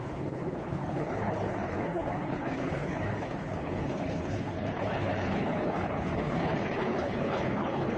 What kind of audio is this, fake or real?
fake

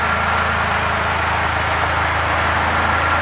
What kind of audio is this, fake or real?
real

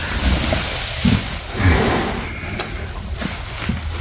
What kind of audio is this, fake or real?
real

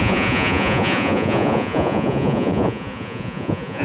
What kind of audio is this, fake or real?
fake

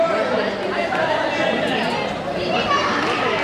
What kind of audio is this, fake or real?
real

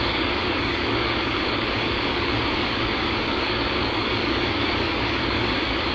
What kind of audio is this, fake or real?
fake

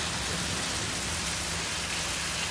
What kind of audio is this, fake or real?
real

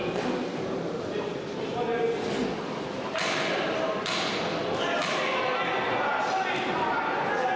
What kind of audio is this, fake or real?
real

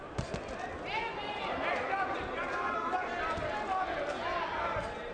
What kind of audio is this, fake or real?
real